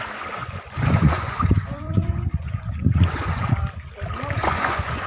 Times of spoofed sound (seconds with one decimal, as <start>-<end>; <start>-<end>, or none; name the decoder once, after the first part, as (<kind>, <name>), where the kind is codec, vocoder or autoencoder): 0.4-3.5 (vocoder, Vocos); 4.4-5.1